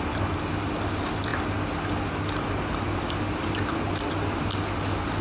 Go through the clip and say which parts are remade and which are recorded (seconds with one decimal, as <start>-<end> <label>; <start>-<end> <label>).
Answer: 0.0-5.2 recorded